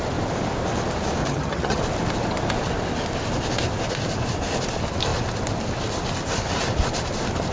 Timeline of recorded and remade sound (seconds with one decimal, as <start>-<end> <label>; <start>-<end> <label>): 0.0-1.2 recorded; 1.2-1.8 remade; 1.8-7.5 recorded